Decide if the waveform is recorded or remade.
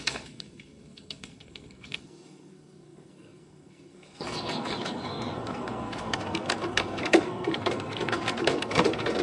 remade